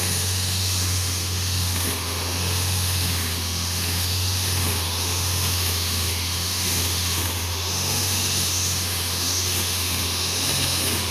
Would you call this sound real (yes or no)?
no